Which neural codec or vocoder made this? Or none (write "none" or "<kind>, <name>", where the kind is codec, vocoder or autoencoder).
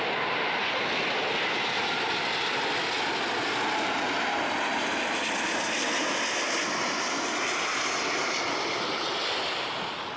none